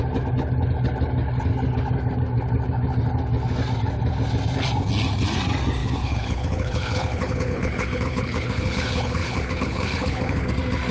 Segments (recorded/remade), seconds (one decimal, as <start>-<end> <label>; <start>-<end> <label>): 0.0-5.8 recorded; 5.8-10.5 remade; 10.5-10.9 recorded